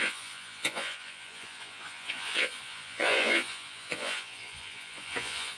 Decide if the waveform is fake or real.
fake